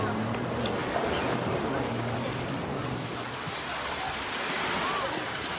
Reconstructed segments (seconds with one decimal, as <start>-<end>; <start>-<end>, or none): none